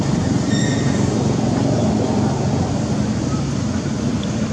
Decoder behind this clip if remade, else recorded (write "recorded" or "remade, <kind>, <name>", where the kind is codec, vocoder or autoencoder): recorded